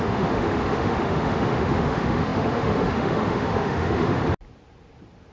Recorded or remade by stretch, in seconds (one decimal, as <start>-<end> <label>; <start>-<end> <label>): 0.0-4.2 remade; 4.2-5.3 recorded